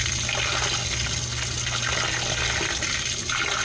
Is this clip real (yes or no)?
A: yes